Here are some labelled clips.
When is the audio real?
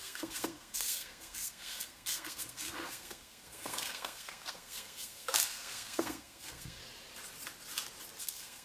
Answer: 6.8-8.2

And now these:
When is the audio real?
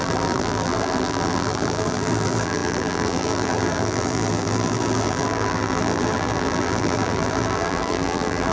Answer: none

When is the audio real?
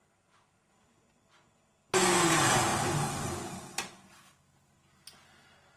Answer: 0.0-5.8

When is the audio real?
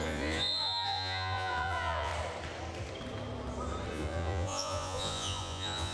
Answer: 2.1-3.9